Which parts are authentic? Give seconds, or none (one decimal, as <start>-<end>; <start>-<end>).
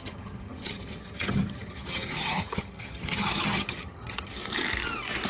4.4-5.3